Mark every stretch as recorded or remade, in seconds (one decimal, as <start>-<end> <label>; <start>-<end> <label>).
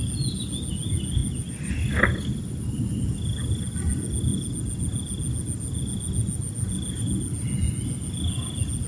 0.0-8.9 recorded